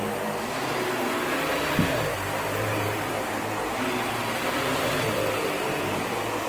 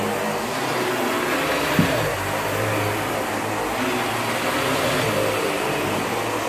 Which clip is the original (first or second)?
second